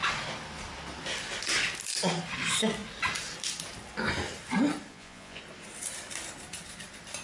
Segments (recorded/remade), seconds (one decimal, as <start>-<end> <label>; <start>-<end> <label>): 0.0-4.9 recorded; 4.9-5.4 remade; 5.4-7.2 recorded